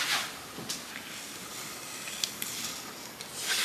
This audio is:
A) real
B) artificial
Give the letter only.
A